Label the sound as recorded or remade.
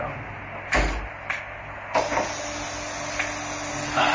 recorded